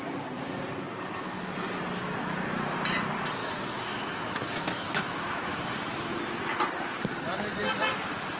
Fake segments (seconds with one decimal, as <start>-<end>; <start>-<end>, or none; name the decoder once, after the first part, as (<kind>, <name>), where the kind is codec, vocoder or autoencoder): 3.4-6.5 (autoencoder, DAC-VAE)